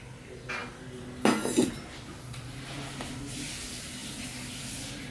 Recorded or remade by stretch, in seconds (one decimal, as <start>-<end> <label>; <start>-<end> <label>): 0.0-5.1 recorded